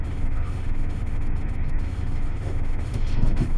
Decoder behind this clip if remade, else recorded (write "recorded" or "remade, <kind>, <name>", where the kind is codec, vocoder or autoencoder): remade, autoencoder, DAC-VAE